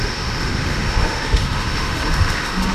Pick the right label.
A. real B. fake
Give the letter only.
B